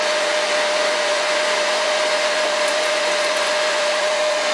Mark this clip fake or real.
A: fake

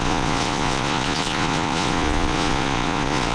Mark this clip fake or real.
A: fake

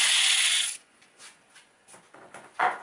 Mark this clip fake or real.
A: fake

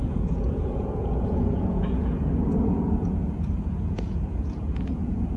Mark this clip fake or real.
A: fake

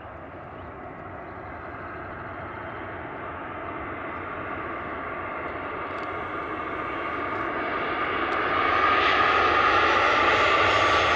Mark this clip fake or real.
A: real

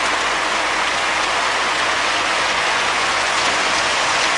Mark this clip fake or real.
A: fake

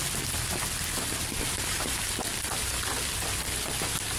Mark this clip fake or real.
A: real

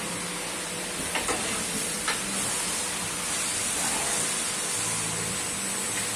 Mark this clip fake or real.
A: real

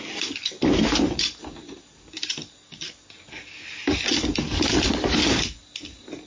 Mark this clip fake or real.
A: real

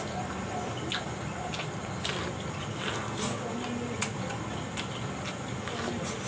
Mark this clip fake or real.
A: real